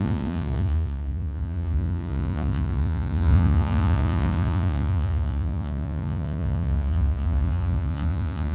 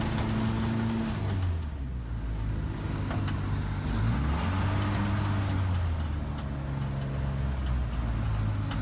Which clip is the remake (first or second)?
first